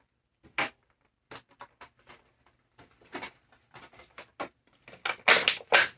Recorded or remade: recorded